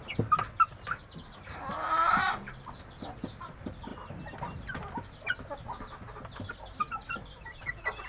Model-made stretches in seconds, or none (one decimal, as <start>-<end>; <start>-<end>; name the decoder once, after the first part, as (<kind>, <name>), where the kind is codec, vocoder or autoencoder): none